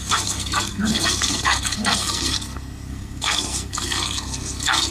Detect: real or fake fake